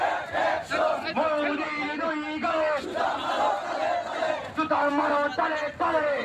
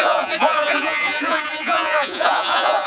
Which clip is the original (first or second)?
first